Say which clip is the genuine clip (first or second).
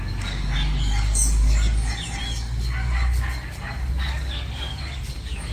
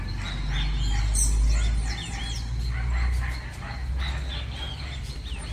second